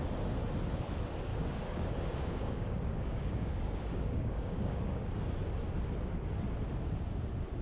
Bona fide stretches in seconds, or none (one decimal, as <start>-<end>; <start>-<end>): 0.0-1.3; 5.0-7.6